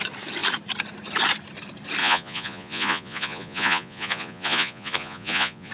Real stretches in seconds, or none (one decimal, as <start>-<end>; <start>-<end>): 0.0-2.0